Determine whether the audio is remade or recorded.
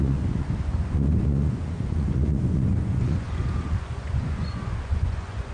remade